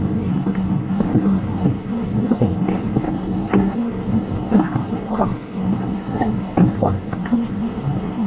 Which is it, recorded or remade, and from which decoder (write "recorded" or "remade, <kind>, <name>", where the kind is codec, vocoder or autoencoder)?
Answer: remade, codec, SNAC